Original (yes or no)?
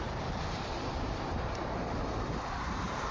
no